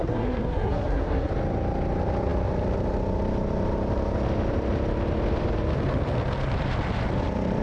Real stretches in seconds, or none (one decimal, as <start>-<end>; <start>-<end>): 1.3-7.6